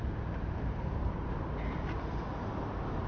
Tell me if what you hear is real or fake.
real